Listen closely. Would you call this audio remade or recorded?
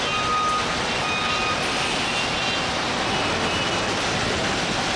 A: recorded